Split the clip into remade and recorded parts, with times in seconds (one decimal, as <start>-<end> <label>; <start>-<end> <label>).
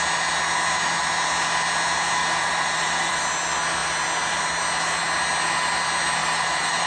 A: 0.0-2.2 recorded; 2.2-3.2 remade; 3.2-6.2 recorded; 6.2-6.9 remade